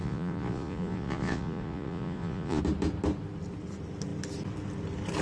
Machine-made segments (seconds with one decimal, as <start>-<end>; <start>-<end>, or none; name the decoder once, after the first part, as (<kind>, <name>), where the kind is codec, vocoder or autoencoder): 0.0-2.6 (vocoder, Vocos)